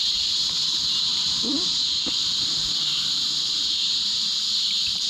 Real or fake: fake